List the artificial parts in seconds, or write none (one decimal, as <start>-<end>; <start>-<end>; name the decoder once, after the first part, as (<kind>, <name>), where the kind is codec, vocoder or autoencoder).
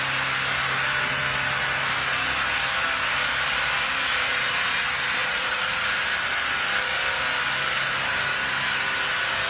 5.2-5.9 (vocoder, Vocos)